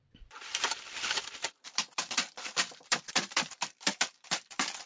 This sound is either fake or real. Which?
fake